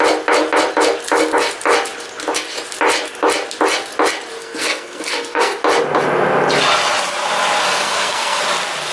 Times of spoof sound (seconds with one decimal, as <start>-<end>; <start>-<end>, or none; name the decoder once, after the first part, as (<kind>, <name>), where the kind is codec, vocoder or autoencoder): 4.4-5.6 (codec, SNAC); 7.6-8.4

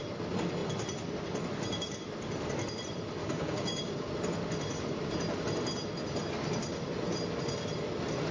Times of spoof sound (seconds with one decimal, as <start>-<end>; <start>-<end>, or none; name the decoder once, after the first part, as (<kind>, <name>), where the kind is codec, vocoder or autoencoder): 3.2-4.1 (codec, DAC)

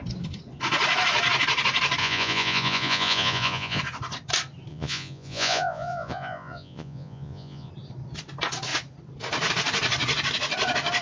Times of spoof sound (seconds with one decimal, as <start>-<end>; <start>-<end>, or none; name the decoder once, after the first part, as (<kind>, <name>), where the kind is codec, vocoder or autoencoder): 2.0-3.8 (vocoder, Vocos); 4.7-7.7

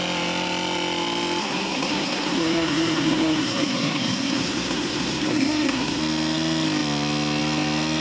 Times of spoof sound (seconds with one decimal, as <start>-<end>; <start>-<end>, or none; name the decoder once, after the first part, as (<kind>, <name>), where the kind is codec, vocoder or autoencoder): 1.4-6.0 (codec, SNAC)

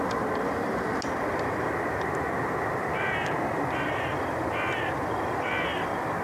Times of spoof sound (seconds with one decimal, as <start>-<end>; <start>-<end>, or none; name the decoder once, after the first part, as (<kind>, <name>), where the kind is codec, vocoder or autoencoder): none

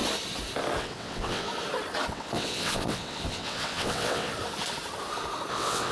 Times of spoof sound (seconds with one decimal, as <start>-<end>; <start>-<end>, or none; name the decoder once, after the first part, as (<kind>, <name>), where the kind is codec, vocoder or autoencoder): 0.8-1.5 (vocoder, WaveNeXt); 2.1-4.3; 5.5-5.9

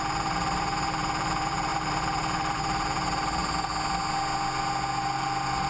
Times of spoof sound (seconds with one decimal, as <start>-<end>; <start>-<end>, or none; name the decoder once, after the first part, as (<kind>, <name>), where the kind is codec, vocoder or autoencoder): 0.0-3.7 (vocoder, BigVGAN v2); 5.0-5.7